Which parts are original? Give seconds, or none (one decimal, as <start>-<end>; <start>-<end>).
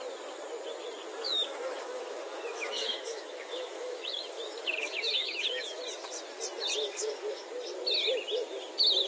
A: 0.0-1.1; 5.8-9.1